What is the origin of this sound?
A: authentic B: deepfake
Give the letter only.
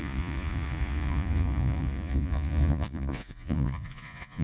B